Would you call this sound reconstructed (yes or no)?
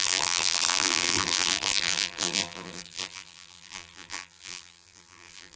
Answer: yes